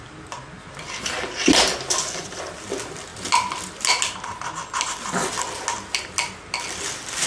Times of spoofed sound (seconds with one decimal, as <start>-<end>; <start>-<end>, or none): none